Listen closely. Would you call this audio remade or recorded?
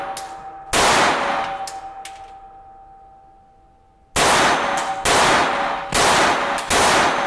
recorded